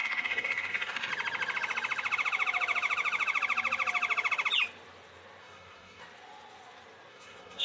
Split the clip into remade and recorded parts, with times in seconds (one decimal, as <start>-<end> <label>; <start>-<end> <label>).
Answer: 0.0-1.1 remade; 1.1-5.4 recorded; 5.4-6.0 remade; 6.0-7.1 recorded; 7.1-7.6 remade